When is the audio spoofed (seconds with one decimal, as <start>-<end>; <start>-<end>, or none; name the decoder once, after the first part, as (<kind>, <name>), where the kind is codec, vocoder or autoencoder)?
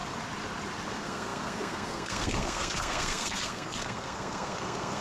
0.9-5.0 (codec, SNAC)